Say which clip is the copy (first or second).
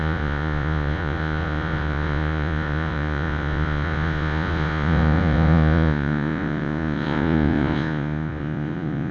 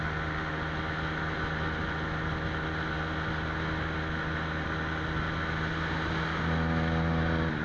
first